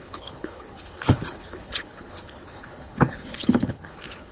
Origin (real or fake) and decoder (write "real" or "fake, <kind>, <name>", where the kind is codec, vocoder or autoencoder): fake, codec, HILCodec